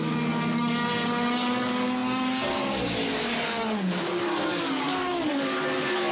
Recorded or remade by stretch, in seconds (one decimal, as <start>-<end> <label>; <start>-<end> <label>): 0.0-6.1 remade